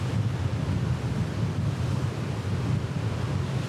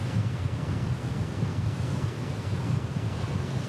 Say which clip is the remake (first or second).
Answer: second